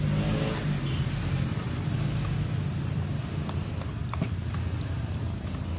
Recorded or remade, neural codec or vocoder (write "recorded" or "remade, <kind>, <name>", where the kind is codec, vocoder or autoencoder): recorded